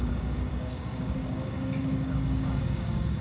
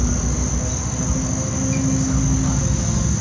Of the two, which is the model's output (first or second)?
first